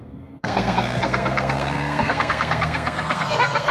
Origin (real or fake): fake